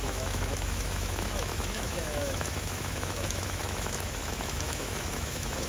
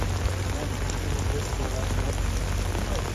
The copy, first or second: first